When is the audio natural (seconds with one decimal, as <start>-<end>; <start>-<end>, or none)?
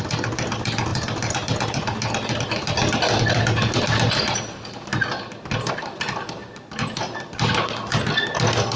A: 0.0-8.8